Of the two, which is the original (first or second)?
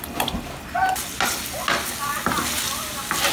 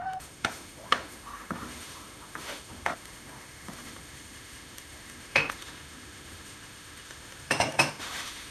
first